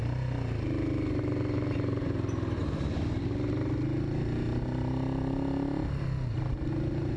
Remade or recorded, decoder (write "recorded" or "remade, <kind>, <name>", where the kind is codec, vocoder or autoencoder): recorded